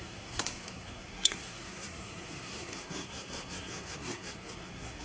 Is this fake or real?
fake